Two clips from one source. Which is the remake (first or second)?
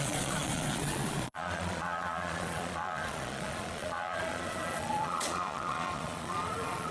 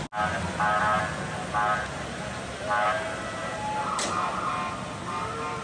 first